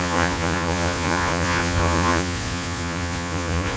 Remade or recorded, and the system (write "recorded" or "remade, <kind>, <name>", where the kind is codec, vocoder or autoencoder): remade, vocoder, Vocos